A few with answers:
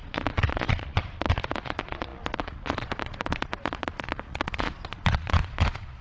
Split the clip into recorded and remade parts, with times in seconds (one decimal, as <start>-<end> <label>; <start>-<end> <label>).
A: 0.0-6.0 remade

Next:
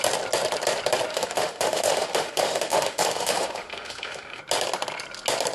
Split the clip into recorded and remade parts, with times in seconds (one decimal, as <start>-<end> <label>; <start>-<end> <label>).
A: 0.0-1.1 recorded; 1.1-4.4 remade; 4.4-5.5 recorded

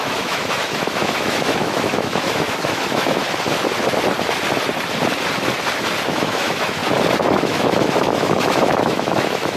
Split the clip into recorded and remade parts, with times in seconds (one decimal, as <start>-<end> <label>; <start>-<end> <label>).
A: 0.0-3.2 remade; 3.2-6.1 recorded; 6.1-6.8 remade; 6.8-7.4 recorded; 7.4-9.6 remade

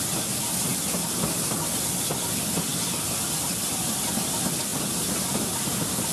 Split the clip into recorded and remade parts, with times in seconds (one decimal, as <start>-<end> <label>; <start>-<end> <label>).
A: 0.0-6.1 recorded